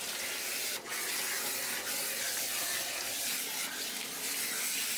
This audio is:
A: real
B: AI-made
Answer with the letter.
A